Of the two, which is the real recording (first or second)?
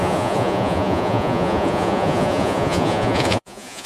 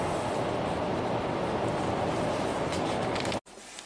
second